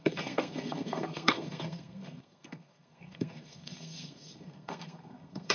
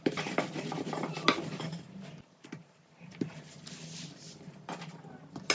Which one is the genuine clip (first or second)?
second